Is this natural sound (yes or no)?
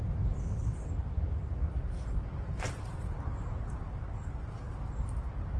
yes